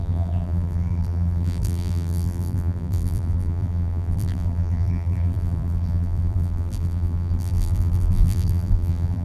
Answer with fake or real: fake